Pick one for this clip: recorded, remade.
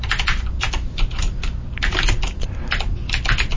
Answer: recorded